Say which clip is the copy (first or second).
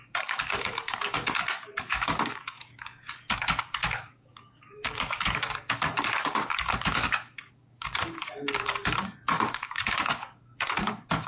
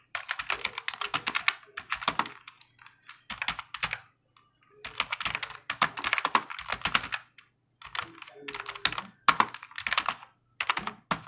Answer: first